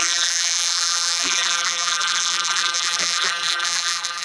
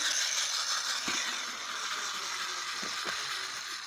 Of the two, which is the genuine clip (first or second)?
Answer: second